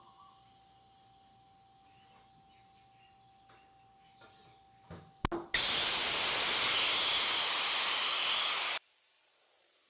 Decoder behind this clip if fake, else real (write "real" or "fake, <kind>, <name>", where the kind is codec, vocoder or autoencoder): real